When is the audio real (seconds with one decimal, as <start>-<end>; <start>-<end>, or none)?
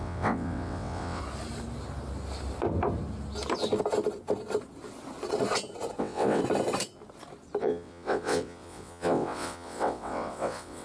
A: 1.2-6.0; 6.4-7.6